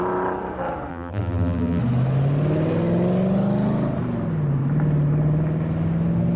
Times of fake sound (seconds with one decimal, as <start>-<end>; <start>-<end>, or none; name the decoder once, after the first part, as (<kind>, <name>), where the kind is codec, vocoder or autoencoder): 0.9-1.8 (vocoder, BigVGAN v2)